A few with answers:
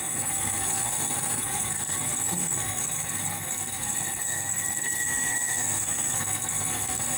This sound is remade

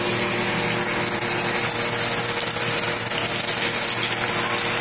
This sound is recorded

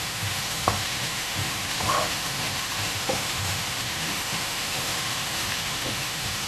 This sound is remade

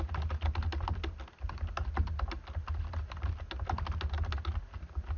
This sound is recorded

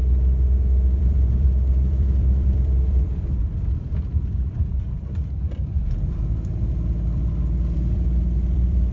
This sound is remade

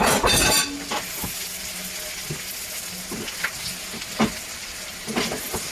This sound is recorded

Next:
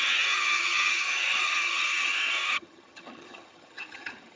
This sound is remade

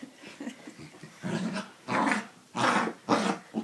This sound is recorded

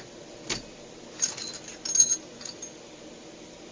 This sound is recorded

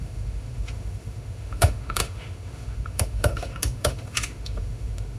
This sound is remade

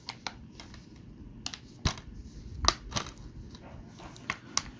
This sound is recorded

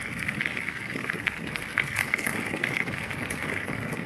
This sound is remade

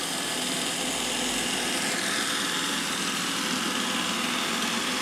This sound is recorded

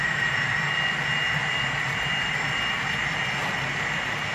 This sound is recorded